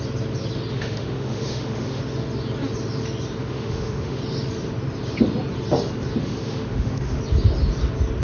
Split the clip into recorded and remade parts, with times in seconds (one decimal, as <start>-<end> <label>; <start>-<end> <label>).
0.0-0.7 recorded; 0.7-2.0 remade; 2.0-3.4 recorded; 3.4-4.2 remade; 4.2-6.2 recorded; 6.2-7.2 remade; 7.2-8.2 recorded